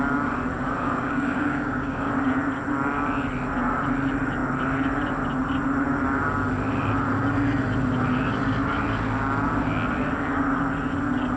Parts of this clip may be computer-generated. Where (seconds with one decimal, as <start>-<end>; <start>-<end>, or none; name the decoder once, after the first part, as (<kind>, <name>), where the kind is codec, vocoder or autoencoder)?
0.8-2.1 (codec, DAC)